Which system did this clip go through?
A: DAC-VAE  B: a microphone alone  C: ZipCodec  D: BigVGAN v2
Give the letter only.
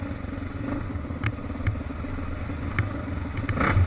B